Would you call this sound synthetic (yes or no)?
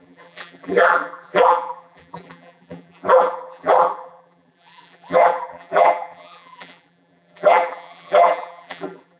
yes